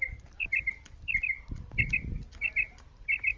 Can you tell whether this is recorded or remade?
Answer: recorded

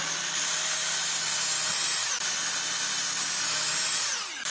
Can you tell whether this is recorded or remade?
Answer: recorded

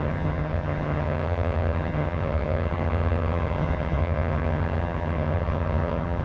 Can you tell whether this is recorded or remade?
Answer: remade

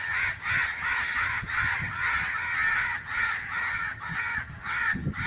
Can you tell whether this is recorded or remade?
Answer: remade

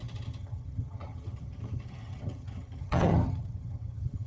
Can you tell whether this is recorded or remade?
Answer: remade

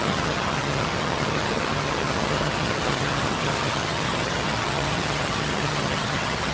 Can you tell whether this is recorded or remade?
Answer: remade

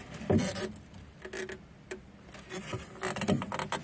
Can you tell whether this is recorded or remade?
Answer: recorded